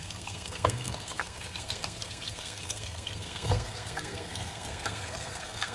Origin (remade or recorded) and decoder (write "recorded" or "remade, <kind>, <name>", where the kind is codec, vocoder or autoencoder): remade, codec, SNAC